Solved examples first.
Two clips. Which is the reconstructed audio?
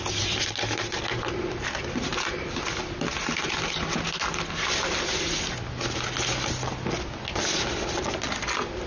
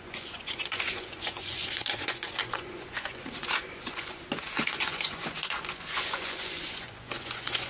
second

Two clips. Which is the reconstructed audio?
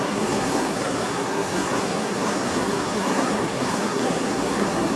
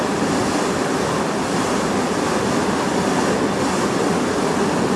first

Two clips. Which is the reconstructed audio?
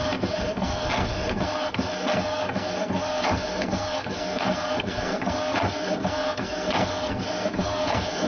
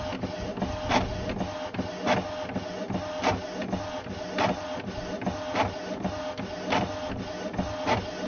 first